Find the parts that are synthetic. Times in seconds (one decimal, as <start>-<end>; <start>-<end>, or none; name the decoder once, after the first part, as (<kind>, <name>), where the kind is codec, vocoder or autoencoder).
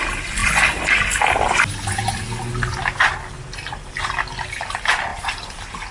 none